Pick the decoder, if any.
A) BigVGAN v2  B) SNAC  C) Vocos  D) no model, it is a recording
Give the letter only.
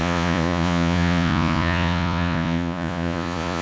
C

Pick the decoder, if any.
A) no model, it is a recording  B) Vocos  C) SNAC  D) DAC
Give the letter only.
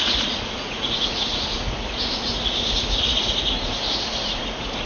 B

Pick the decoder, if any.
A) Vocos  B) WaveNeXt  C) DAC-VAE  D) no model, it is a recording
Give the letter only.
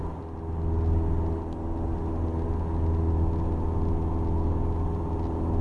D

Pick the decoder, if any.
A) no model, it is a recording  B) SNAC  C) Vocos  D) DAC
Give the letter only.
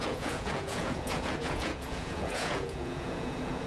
C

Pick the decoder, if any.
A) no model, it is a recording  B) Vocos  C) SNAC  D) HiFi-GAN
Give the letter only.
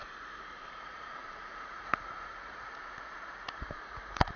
B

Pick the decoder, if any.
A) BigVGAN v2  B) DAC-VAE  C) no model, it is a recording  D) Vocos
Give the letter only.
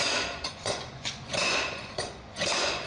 D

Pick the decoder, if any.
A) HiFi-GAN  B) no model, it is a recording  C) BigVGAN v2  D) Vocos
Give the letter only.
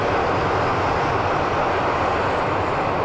B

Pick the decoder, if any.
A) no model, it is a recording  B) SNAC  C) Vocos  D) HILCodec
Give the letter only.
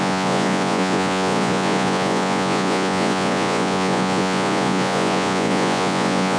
C